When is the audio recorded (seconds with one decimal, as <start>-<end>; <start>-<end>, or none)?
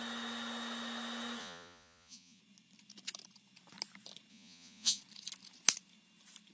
0.0-1.4; 2.4-4.3; 5.0-6.5